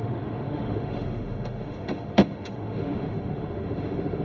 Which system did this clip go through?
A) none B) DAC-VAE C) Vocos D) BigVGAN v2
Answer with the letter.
B